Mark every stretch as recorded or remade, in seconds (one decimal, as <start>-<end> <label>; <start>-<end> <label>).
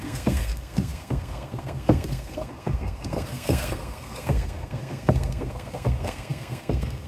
0.0-7.1 remade